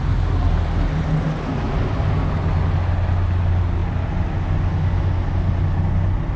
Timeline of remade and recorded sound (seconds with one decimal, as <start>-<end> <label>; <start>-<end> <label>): 0.0-6.4 recorded

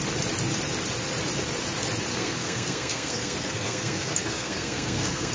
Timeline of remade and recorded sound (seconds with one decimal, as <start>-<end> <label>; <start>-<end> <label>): 0.0-2.1 recorded; 2.1-5.3 remade

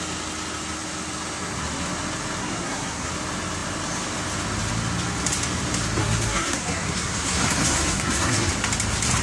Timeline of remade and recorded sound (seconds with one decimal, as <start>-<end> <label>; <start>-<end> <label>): 0.0-2.4 recorded; 2.4-3.1 remade; 3.1-6.0 recorded; 6.0-8.5 remade; 8.5-9.2 recorded